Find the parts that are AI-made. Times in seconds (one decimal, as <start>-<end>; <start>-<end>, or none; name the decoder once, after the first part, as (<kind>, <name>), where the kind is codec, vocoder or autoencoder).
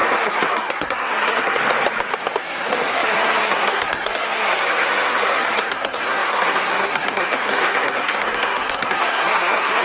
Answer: 0.0-1.6 (codec, SNAC); 2.4-9.8